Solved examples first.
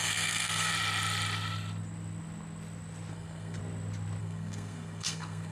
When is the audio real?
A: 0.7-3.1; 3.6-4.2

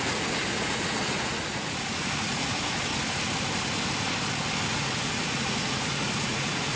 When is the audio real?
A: 2.9-4.7